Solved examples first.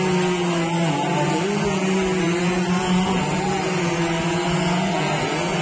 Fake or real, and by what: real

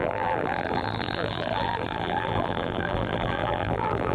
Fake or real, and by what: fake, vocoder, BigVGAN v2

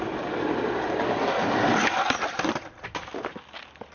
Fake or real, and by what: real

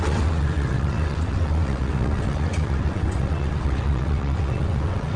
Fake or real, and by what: fake, vocoder, WaveNeXt